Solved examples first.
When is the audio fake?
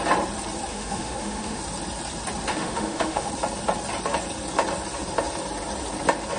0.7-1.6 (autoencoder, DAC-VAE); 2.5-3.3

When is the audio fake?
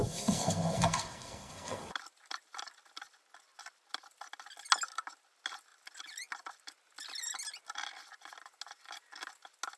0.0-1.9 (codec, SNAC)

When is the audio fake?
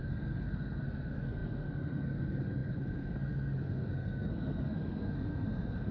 0.0-5.9 (codec, SNAC)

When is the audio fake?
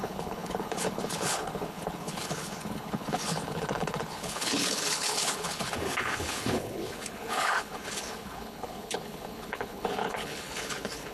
0.0-11.1 (codec, HILCodec)